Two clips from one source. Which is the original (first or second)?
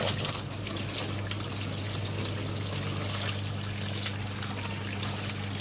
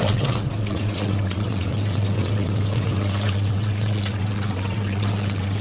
first